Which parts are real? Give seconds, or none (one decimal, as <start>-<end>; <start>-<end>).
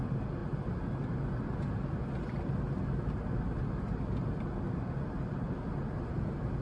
0.0-6.6